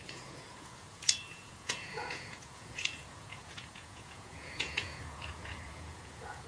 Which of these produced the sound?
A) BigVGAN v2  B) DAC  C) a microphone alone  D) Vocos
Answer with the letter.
D